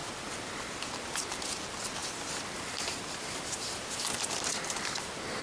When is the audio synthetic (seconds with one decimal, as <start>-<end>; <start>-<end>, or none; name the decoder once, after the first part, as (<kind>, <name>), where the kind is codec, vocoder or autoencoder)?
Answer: 0.0-0.6 (vocoder, BigVGAN v2); 2.0-3.7